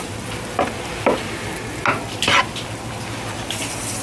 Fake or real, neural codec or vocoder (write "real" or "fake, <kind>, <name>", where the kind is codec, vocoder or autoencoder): real